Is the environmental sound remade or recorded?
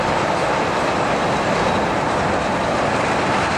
recorded